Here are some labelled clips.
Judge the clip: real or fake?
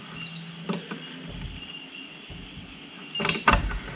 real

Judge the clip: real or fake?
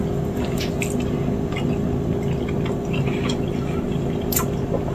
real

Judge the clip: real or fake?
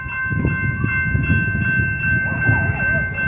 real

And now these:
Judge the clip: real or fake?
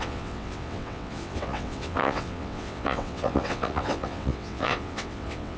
fake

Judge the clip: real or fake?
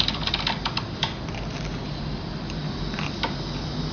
real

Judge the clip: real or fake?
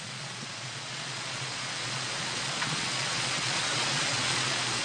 fake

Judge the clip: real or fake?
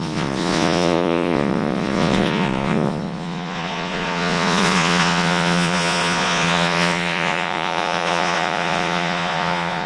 fake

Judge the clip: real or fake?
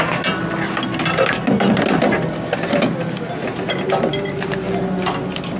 real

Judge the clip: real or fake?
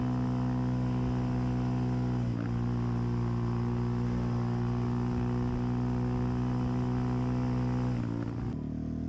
real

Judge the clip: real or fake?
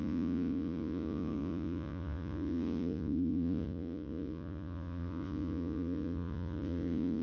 fake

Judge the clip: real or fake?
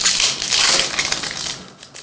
real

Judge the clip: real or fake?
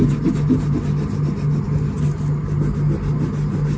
real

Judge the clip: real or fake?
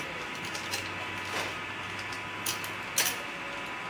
real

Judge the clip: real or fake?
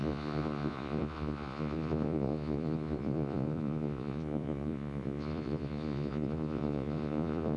fake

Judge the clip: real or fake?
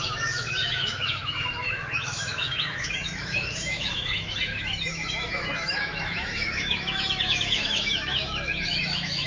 fake